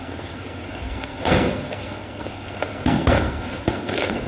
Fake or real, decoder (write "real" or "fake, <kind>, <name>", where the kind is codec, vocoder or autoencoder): fake, codec, SNAC